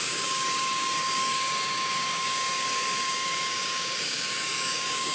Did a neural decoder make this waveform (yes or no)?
yes